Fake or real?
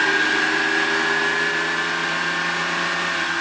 real